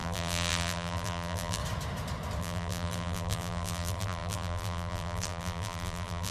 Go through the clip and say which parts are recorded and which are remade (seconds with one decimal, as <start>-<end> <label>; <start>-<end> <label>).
0.0-1.6 remade; 1.6-2.4 recorded; 2.4-6.3 remade